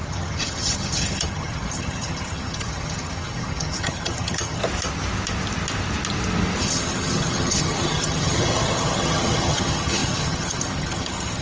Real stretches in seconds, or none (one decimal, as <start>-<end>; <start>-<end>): 4.6-6.6